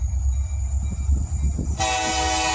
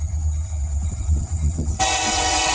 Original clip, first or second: first